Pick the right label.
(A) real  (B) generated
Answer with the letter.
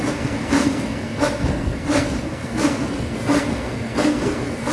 B